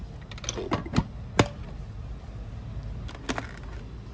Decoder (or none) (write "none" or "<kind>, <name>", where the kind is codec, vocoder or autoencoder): none